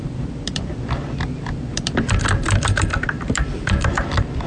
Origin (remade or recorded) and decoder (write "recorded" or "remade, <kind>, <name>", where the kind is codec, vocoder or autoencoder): remade, vocoder, BigVGAN v2